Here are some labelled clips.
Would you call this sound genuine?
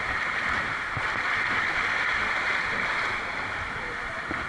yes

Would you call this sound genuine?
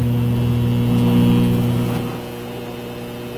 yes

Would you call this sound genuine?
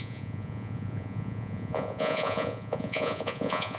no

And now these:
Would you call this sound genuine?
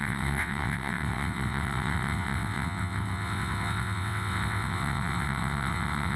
no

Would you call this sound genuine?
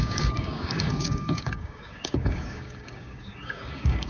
no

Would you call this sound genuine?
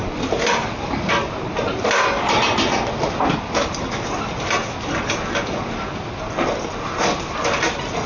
yes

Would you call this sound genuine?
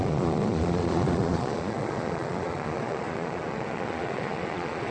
no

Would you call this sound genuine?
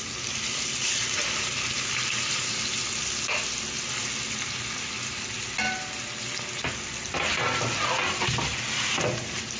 yes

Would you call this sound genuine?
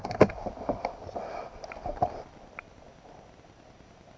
yes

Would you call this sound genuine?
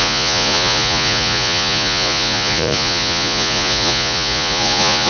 no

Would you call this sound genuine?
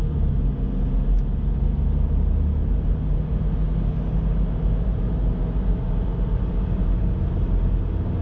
yes